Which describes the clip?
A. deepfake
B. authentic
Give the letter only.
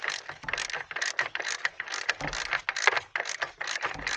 B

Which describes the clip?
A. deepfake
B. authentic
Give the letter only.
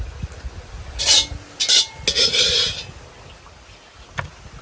B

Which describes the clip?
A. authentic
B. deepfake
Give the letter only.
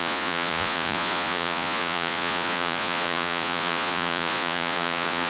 B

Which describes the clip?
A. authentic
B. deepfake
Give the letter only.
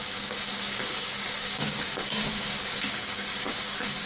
B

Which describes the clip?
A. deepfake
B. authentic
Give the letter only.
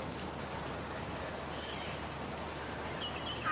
B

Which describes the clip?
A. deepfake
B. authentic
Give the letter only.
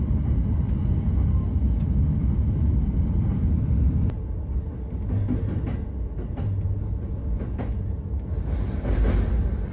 B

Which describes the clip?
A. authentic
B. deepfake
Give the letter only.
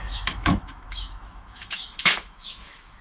B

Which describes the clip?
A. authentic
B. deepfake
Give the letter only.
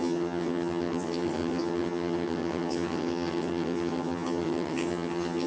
B